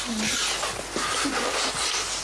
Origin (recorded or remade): recorded